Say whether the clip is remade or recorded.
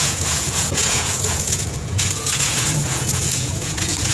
remade